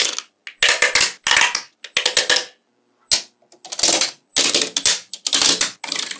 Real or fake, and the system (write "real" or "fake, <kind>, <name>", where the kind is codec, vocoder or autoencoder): real